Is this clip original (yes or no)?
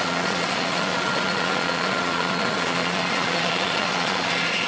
no